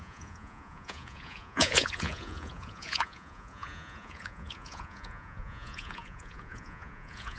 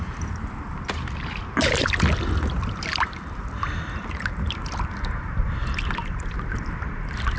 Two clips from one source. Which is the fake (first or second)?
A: first